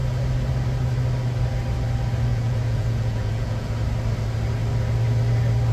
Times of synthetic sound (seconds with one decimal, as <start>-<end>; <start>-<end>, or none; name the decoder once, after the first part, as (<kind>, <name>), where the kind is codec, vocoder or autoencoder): 2.3-3.7 (vocoder, Vocos)